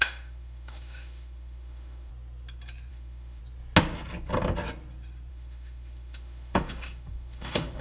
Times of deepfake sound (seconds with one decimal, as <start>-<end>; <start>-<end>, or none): 0.0-2.1; 2.9-3.4; 5.3-7.8